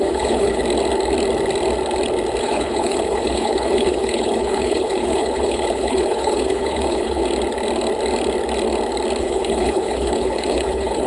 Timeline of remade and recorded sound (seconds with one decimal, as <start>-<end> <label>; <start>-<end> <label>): 0.0-0.6 remade; 0.6-2.4 recorded; 2.4-7.2 remade; 7.2-9.2 recorded; 9.2-11.1 remade